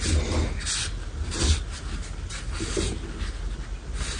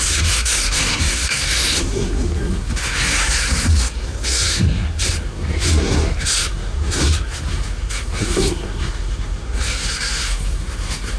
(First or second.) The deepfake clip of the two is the second